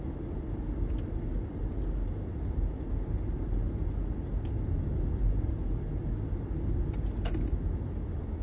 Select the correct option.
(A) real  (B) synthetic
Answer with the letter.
A